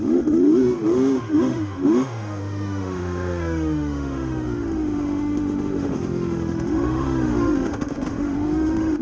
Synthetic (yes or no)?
yes